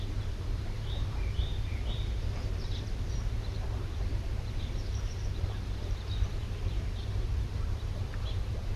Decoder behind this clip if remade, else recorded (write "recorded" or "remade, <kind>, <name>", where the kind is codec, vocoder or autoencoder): remade, vocoder, BigVGAN v2